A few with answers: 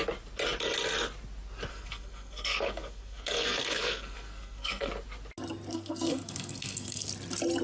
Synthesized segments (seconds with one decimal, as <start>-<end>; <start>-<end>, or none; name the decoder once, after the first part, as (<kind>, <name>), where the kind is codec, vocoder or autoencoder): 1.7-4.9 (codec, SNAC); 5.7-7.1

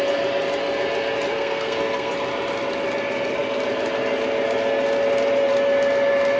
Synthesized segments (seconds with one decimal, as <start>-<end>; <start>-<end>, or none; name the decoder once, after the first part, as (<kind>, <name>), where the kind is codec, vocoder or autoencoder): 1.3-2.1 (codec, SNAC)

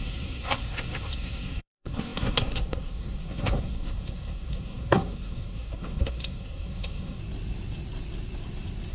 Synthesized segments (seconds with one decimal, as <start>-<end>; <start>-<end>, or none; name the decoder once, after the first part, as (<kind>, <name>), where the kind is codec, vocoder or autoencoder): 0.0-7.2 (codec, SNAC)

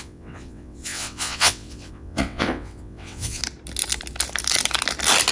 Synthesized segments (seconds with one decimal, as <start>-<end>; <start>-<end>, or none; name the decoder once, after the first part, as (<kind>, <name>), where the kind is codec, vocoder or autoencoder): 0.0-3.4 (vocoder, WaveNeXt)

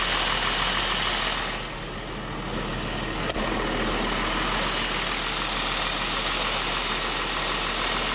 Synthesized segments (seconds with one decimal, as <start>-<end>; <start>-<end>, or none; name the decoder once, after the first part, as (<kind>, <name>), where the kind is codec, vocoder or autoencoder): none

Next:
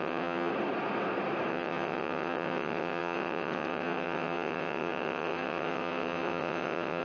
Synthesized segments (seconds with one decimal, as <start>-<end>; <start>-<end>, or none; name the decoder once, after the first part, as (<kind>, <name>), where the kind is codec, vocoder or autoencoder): 0.0-0.5 (vocoder, WaveNeXt); 1.5-7.0